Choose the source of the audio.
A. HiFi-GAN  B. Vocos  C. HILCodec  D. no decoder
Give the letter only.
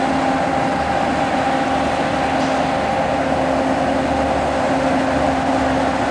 D